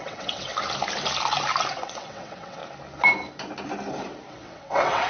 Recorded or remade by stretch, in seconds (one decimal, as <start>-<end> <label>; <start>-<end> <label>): 0.0-0.5 remade; 0.5-1.7 recorded; 1.7-2.6 remade; 2.6-4.3 recorded; 4.3-5.1 remade